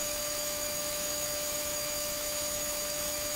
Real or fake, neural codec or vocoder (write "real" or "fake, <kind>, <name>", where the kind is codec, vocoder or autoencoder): fake, autoencoder, DAC-VAE